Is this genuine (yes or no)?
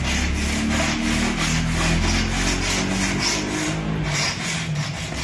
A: yes